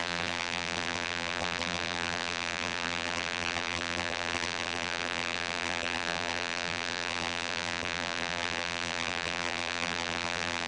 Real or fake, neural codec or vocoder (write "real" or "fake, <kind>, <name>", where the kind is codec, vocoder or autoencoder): fake, vocoder, BigVGAN v2